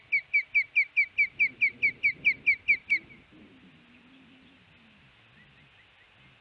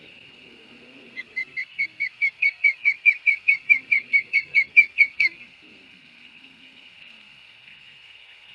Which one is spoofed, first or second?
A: second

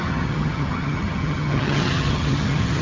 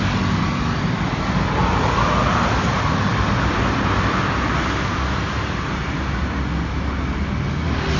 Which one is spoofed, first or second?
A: first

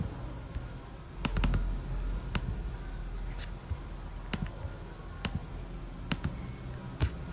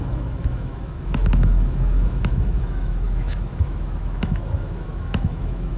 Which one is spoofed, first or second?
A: second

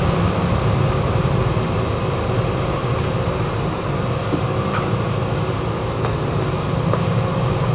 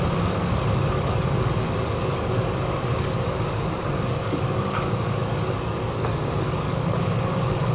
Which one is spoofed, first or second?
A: second